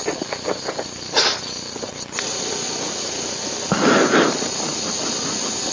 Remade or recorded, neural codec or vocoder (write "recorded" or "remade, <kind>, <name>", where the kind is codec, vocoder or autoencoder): recorded